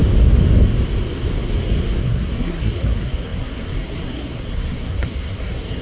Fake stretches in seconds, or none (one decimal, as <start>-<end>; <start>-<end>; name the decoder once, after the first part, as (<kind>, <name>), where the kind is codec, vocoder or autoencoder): 2.0-5.8 (codec, SNAC)

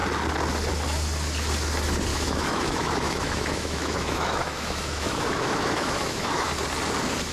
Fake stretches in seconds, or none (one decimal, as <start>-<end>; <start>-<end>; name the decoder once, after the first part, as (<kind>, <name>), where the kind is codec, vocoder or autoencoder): 2.1-6.5 (autoencoder, DAC-VAE)

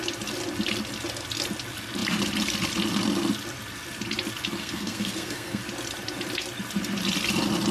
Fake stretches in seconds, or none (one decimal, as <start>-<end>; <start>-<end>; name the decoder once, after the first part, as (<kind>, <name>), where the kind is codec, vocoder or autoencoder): 4.6-5.6 (codec, SNAC)

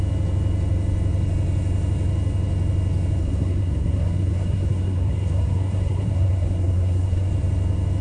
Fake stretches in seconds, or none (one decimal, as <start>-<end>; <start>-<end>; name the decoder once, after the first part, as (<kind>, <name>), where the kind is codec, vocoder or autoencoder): 3.2-7.3 (codec, SNAC)

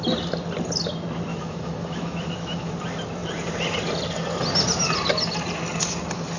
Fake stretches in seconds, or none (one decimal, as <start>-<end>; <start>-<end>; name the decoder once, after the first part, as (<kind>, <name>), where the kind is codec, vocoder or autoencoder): 1.3-2.7 (autoencoder, DAC-VAE)

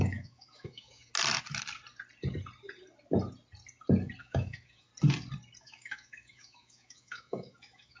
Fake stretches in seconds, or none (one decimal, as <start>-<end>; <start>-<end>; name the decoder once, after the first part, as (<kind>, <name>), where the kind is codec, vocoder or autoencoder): 0.0-1.1 (autoencoder, DAC-VAE); 4.2-4.9; 5.6-8.0